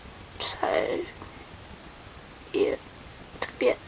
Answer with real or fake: real